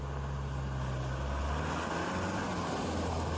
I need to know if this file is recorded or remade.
recorded